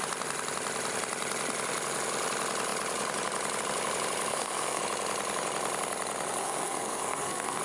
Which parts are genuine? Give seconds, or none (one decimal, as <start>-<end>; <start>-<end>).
0.0-4.3; 4.8-6.4